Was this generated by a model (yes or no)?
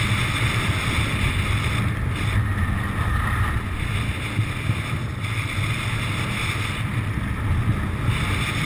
no